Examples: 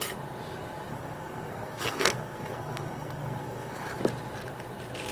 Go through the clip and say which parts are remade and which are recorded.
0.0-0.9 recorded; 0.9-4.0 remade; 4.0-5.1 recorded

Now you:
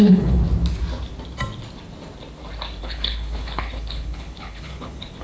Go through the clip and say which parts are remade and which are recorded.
0.0-0.4 remade; 0.4-2.8 recorded; 2.8-5.2 remade

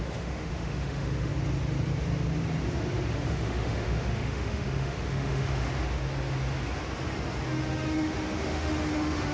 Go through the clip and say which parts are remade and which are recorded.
0.0-1.3 remade; 1.3-3.1 recorded; 3.1-5.7 remade; 5.7-7.5 recorded; 7.5-9.3 remade

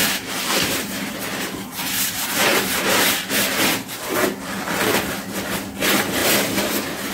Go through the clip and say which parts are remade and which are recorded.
0.0-3.8 remade; 3.8-6.2 recorded; 6.2-7.1 remade

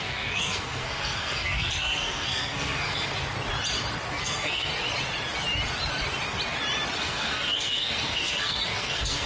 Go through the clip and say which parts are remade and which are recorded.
0.0-3.1 remade; 3.1-4.2 recorded; 4.2-4.7 remade; 4.7-7.0 recorded; 7.0-9.3 remade

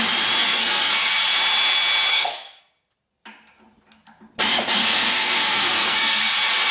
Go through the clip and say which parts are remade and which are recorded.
0.0-0.4 recorded; 0.4-1.1 remade; 1.1-2.1 recorded; 2.1-2.6 remade; 2.6-4.8 recorded; 4.8-6.2 remade; 6.2-6.7 recorded